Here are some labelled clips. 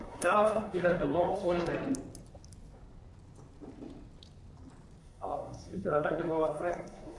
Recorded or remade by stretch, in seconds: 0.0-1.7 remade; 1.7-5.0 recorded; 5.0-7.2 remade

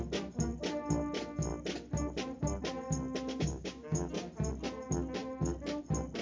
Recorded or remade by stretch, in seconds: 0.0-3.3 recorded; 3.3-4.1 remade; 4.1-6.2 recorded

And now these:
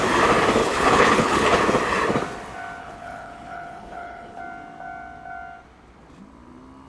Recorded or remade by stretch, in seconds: 0.0-0.6 recorded; 0.6-1.6 remade; 1.6-2.8 recorded; 2.8-4.4 remade; 4.4-6.9 recorded

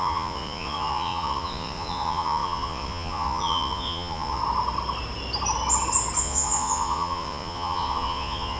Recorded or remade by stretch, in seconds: 0.0-4.4 remade; 4.4-6.2 recorded; 6.2-8.6 remade

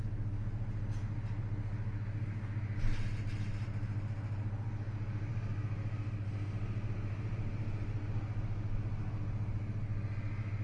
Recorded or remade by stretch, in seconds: 0.0-10.6 recorded